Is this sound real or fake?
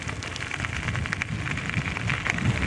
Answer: real